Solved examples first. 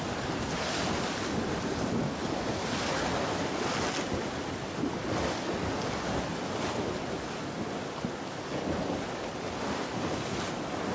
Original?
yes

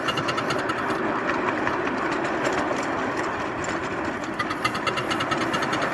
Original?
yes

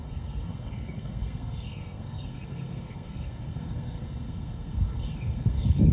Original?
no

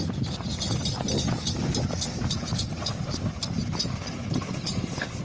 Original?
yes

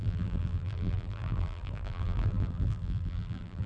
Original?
no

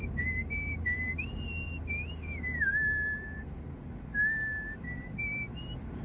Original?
yes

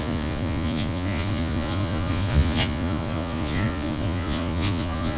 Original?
no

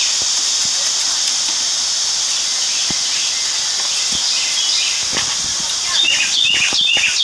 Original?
yes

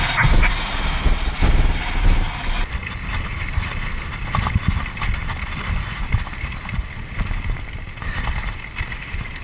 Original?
yes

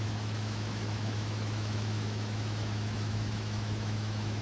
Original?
no